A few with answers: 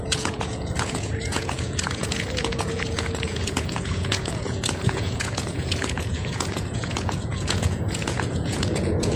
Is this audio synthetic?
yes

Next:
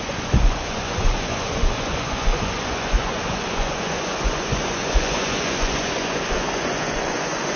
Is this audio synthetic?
yes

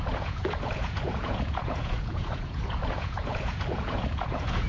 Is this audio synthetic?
yes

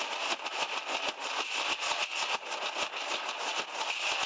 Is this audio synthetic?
no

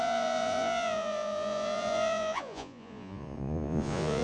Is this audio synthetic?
yes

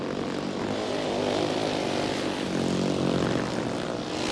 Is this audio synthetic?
no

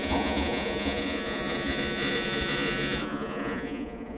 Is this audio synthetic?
yes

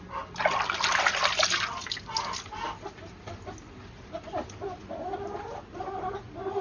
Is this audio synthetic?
no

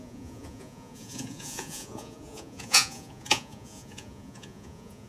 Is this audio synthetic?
yes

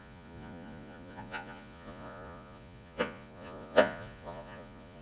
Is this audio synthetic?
yes